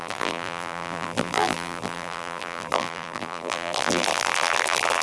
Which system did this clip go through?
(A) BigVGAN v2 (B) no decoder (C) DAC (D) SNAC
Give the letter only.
A